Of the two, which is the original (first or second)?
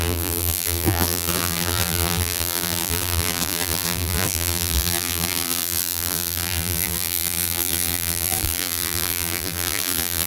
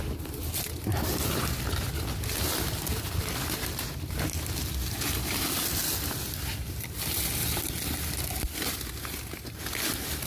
second